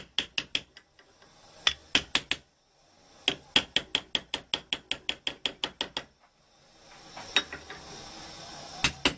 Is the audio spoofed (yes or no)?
no